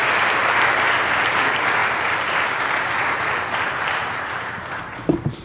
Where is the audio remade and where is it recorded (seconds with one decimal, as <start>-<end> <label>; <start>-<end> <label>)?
0.0-1.8 recorded; 1.8-4.8 remade; 4.8-5.4 recorded